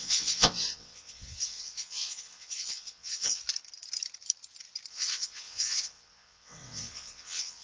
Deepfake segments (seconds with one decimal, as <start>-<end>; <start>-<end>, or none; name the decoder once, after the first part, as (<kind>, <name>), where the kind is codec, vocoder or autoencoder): 0.0-3.4 (vocoder, WaveNeXt); 4.9-7.6